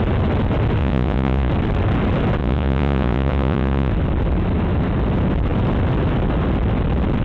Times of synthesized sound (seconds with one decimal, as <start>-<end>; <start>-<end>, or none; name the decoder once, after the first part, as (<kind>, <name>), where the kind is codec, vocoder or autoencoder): 0.8-1.5 (vocoder, Vocos); 2.4-3.9